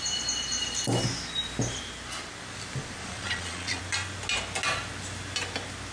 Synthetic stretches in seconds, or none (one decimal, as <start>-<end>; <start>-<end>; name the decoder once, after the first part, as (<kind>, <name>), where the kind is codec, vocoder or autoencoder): 3.0-3.8 (vocoder, Vocos)